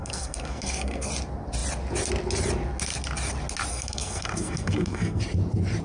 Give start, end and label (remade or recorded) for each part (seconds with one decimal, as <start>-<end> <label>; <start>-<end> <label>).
0.0-1.1 remade; 1.1-3.7 recorded; 3.7-5.2 remade; 5.2-5.8 recorded